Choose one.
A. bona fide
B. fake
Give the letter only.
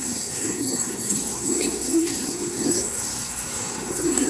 B